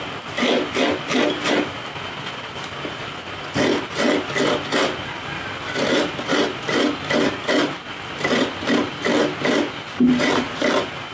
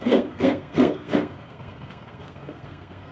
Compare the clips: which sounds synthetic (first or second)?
second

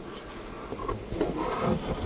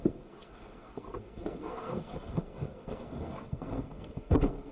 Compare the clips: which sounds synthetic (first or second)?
second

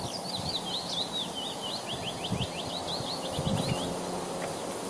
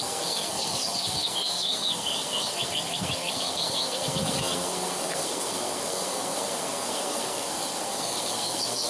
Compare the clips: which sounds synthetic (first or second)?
second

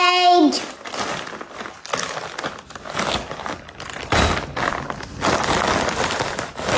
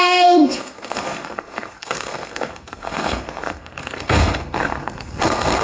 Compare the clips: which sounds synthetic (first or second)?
second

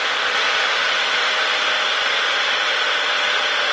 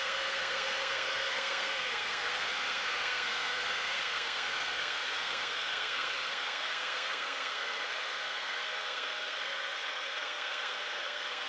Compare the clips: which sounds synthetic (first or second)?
second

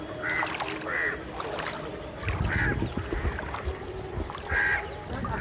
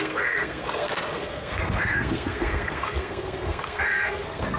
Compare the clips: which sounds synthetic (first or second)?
second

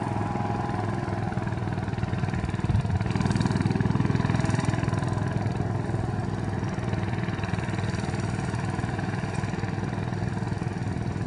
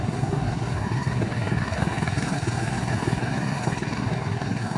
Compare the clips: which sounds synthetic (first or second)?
second